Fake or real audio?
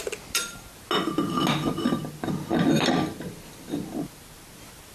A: real